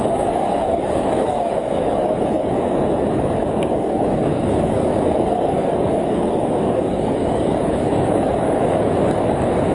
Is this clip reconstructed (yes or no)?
yes